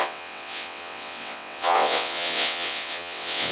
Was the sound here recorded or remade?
remade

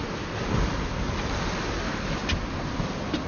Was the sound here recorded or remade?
recorded